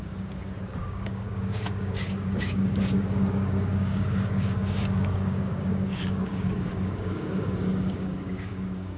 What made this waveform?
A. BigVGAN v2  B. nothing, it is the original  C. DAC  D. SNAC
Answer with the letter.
C